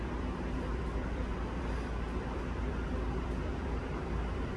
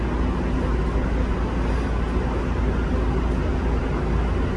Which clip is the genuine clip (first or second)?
second